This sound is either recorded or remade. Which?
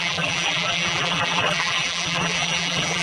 remade